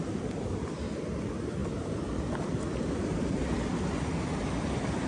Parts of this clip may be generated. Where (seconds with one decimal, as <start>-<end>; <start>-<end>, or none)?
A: none

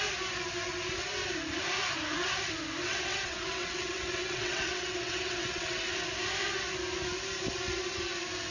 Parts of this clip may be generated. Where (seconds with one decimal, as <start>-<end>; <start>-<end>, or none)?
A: 2.8-5.9

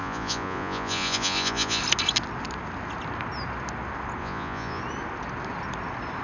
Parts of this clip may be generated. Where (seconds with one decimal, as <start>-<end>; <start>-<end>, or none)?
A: 0.0-1.8; 4.2-4.8

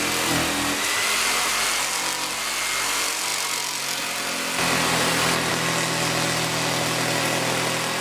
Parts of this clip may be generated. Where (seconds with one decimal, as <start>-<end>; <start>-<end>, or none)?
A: none

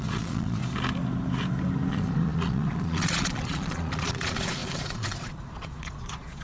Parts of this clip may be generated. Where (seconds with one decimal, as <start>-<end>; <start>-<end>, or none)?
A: 0.0-0.6; 1.9-6.4

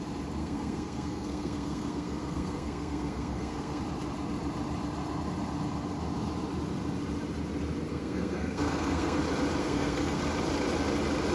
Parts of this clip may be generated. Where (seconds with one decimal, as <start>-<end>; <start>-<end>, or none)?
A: 0.4-3.8; 7.9-9.2; 9.6-10.2

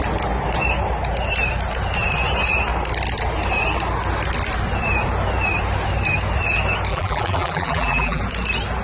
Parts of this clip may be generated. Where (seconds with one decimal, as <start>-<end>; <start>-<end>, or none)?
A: 6.9-8.2

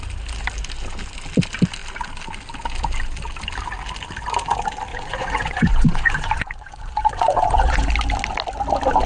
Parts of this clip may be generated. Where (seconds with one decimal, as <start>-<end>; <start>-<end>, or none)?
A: 4.9-7.9